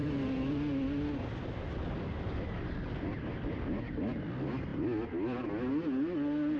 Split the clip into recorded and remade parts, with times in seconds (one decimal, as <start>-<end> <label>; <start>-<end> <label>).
0.0-6.6 recorded

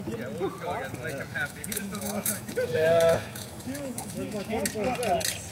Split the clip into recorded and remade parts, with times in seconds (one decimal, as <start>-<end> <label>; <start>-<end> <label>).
0.0-1.3 recorded; 1.3-4.6 remade; 4.6-5.5 recorded

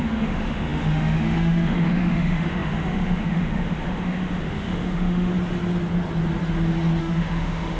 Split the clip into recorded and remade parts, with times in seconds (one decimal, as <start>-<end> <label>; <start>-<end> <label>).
0.0-5.3 remade; 5.3-7.0 recorded; 7.0-7.8 remade

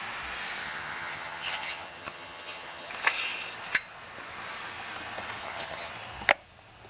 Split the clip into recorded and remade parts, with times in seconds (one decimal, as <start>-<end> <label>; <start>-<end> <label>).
0.0-0.6 recorded; 0.6-2.9 remade; 2.9-5.4 recorded; 5.4-5.9 remade; 5.9-6.9 recorded

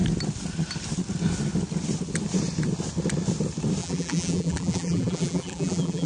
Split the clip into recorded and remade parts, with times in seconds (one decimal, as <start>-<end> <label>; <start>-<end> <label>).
0.0-3.8 recorded; 3.8-6.1 remade

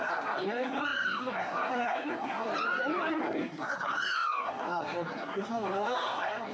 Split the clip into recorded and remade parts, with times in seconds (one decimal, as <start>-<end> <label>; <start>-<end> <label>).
0.0-2.5 remade; 2.5-3.1 recorded; 3.1-6.5 remade

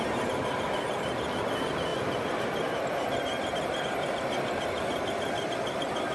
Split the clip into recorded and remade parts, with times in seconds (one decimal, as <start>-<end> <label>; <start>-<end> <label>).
0.0-6.1 recorded

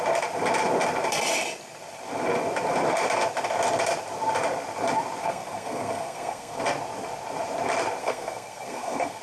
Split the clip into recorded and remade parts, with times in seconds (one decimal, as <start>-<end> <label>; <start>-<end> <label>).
0.0-5.2 recorded; 5.2-6.6 remade; 6.6-8.0 recorded; 8.0-9.2 remade